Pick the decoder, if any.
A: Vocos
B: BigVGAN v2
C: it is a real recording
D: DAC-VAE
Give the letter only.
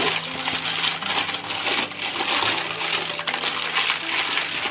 C